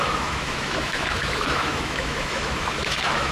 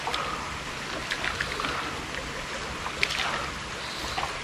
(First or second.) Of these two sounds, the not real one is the first